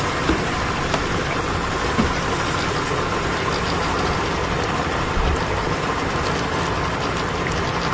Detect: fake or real real